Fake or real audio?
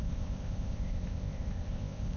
fake